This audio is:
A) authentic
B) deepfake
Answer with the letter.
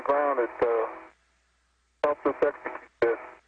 A